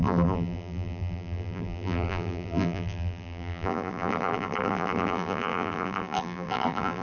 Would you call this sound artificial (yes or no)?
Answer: yes